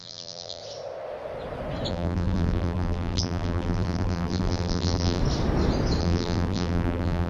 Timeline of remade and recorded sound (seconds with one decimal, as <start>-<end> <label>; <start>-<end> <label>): 0.0-0.6 remade; 0.6-1.9 recorded; 1.9-5.2 remade; 5.2-6.0 recorded; 6.0-7.3 remade